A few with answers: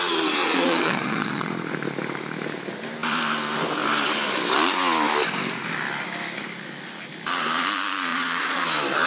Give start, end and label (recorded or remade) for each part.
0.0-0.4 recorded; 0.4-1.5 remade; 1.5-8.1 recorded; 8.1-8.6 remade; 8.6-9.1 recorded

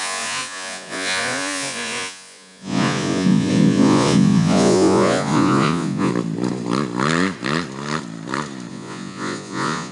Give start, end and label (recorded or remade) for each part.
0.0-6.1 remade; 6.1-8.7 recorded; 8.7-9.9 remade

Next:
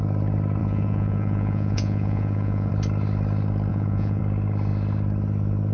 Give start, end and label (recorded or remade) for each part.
0.0-0.6 recorded; 0.6-2.7 remade; 2.7-3.7 recorded; 3.7-4.2 remade; 4.2-5.7 recorded

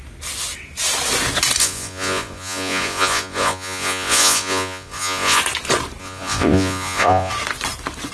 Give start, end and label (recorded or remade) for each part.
0.0-1.6 recorded; 1.6-5.4 remade; 5.4-6.0 recorded; 6.0-7.3 remade; 7.3-8.1 recorded

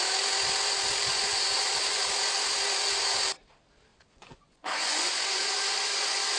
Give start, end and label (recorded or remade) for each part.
0.0-1.1 recorded; 1.1-2.0 remade; 2.0-3.9 recorded; 3.9-6.4 remade

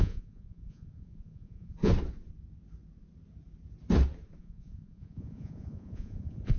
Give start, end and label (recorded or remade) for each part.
0.0-1.9 remade; 1.9-4.4 recorded; 4.4-6.6 remade

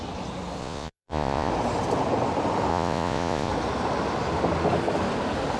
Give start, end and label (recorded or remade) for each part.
0.0-0.6 recorded; 0.6-1.5 remade; 1.5-2.7 recorded; 2.7-3.5 remade; 3.5-5.6 recorded

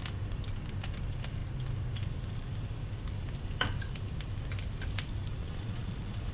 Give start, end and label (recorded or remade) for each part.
0.0-5.4 recorded; 5.4-6.3 remade